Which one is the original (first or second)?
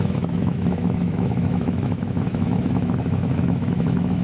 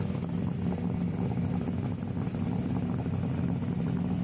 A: second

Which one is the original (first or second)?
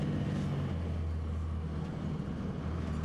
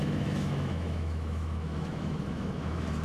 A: first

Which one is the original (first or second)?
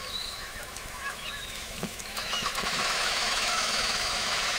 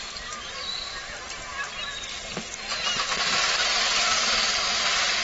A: second